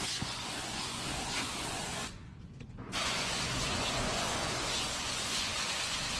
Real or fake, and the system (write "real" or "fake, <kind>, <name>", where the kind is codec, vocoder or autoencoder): fake, vocoder, Vocos